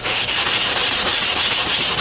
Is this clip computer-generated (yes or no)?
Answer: yes